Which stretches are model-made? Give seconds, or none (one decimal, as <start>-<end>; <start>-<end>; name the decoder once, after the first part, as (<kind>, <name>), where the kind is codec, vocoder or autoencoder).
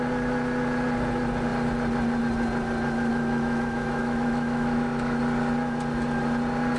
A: 3.1-5.2 (autoencoder, DAC-VAE)